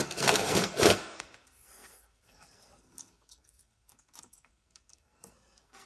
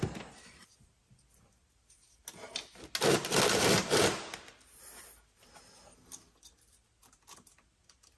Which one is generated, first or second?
first